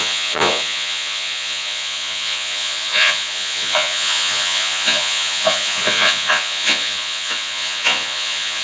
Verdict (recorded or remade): remade